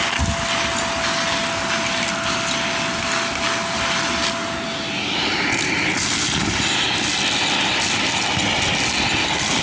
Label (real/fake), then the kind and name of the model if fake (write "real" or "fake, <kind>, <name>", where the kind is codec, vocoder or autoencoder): real